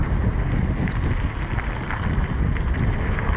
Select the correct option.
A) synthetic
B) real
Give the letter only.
B